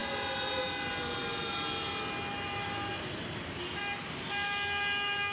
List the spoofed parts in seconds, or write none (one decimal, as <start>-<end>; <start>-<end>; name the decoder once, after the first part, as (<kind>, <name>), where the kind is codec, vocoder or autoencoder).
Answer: none